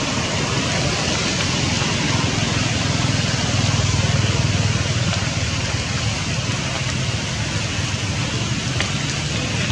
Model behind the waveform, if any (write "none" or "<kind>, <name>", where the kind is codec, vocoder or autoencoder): none